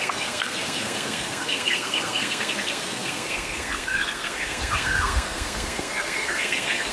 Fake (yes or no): yes